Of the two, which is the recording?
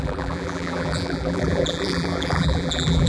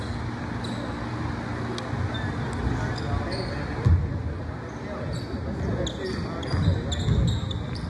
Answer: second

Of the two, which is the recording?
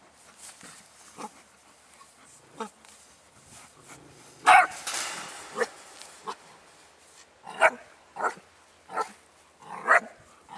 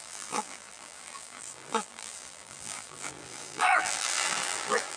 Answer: first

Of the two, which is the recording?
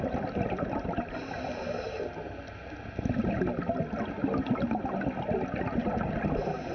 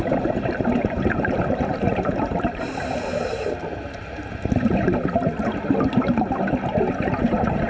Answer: first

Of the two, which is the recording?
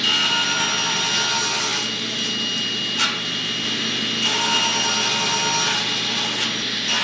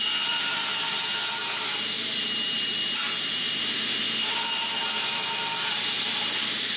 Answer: first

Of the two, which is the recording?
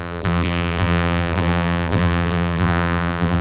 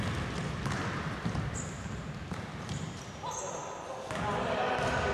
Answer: second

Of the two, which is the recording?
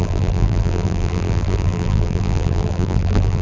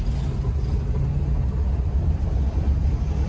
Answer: second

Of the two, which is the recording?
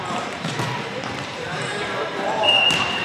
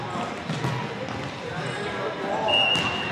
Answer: second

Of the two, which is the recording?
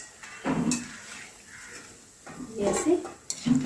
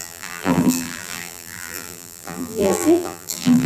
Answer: first